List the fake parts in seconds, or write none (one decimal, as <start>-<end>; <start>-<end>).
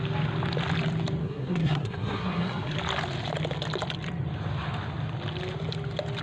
1.2-2.8